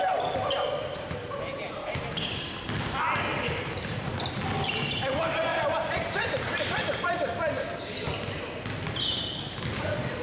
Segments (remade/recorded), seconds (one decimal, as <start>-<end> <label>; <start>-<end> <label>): 0.0-3.3 recorded; 3.3-4.4 remade; 4.4-5.5 recorded; 5.5-6.8 remade; 6.8-10.2 recorded